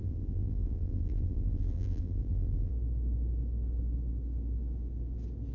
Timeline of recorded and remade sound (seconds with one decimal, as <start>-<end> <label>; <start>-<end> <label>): 0.0-2.7 remade; 2.7-5.5 recorded